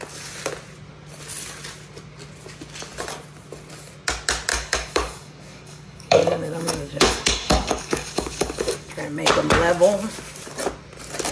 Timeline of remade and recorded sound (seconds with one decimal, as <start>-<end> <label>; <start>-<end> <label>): 0.0-4.5 recorded; 4.5-9.0 remade; 9.0-11.3 recorded

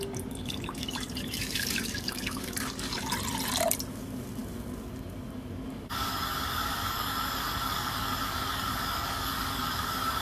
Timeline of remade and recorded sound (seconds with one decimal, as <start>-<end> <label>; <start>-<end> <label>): 0.0-3.1 remade; 3.1-3.9 recorded; 3.9-10.2 remade